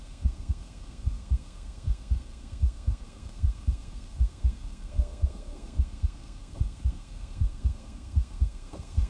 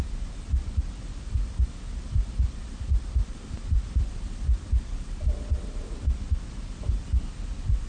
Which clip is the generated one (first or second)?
first